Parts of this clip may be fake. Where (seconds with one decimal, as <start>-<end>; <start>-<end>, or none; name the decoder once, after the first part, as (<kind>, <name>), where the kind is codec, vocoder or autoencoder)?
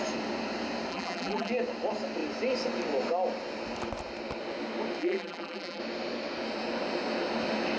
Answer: 0.9-1.5 (vocoder, BigVGAN v2); 5.0-5.8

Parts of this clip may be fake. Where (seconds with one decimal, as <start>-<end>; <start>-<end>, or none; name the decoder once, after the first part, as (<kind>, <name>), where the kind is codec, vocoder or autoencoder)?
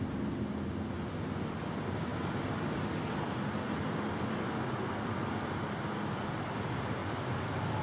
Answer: none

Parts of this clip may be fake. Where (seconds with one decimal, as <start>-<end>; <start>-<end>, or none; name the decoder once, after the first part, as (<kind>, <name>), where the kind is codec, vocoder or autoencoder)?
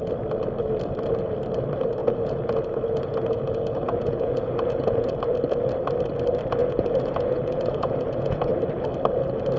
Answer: 2.0-5.2 (vocoder, Vocos); 6.6-8.5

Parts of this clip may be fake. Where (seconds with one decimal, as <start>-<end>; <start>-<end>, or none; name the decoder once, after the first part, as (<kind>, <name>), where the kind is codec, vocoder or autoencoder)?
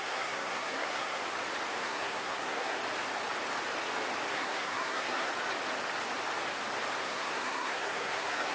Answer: 0.0-1.2 (codec, SNAC); 1.8-2.8; 4.3-5.3; 7.0-8.5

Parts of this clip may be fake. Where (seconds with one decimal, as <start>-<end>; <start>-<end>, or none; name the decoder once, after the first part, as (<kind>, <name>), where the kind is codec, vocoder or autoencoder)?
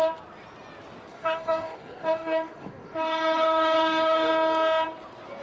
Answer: 1.1-4.3 (codec, DAC)